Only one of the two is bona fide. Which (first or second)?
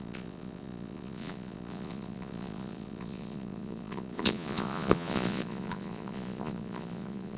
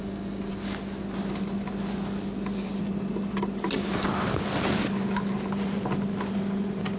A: second